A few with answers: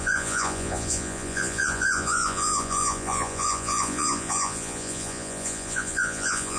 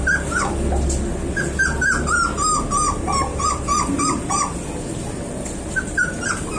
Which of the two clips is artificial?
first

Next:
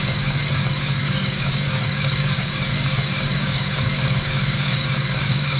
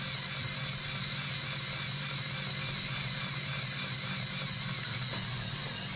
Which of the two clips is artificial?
first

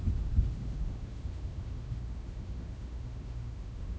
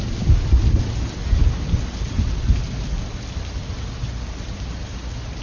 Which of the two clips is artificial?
first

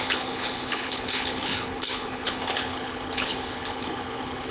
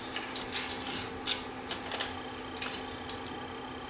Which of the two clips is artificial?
first